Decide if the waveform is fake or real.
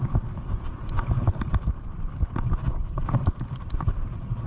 fake